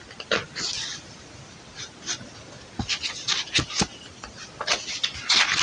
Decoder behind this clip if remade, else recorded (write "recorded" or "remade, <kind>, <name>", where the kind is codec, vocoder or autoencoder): recorded